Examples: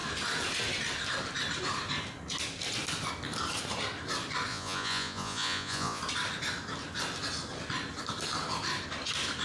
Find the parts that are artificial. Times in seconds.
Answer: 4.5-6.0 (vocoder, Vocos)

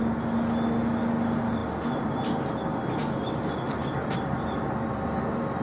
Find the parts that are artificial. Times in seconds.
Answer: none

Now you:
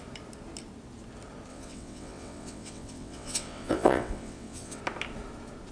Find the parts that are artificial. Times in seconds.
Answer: 1.5-4.8 (vocoder, WaveNeXt)

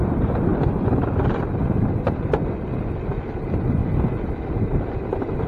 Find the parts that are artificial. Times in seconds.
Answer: 0.0-0.5 (vocoder, BigVGAN v2); 3.4-3.8

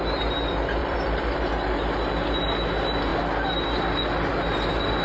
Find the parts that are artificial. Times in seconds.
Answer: 0.8-1.4 (vocoder, BigVGAN v2)